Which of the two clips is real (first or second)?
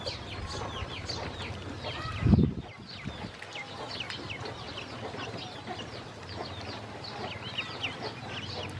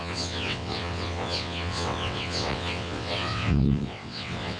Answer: first